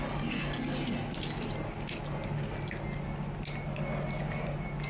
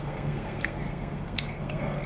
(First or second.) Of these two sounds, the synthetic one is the second